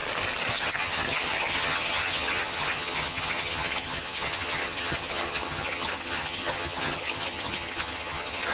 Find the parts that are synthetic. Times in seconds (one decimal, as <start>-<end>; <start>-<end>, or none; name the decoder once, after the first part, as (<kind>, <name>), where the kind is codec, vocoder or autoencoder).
0.5-8.5 (vocoder, HiFi-GAN)